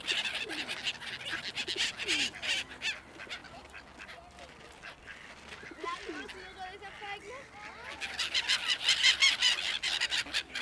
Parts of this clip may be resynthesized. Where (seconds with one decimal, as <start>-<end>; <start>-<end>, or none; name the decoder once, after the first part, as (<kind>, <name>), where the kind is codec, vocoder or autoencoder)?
none